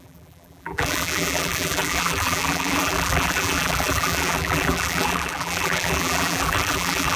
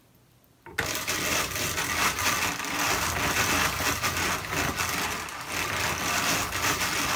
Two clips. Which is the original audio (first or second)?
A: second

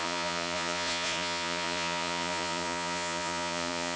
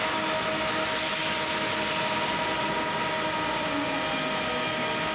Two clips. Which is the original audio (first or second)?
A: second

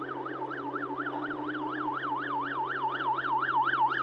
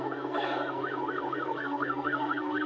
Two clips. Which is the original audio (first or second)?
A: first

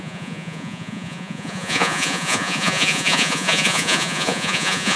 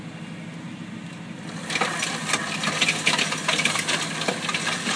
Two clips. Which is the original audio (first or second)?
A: second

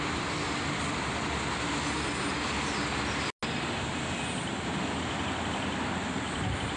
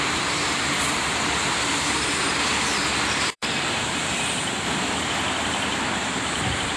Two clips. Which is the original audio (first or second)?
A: first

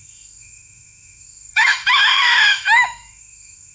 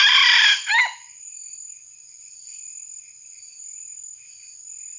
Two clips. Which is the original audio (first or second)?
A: second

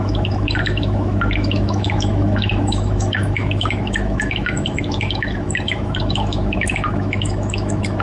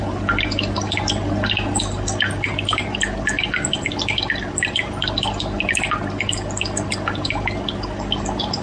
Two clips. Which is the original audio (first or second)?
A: second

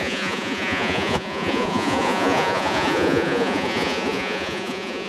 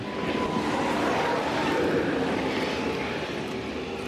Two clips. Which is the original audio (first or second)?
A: second